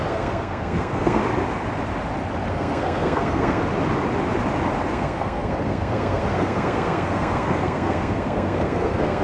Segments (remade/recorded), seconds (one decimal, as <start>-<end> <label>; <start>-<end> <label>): 0.0-1.2 remade; 1.2-2.5 recorded; 2.5-3.6 remade; 3.6-4.9 recorded; 4.9-9.2 remade